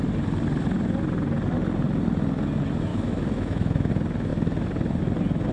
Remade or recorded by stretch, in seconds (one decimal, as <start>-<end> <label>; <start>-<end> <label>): 0.0-2.9 recorded; 2.9-3.9 remade; 3.9-5.5 recorded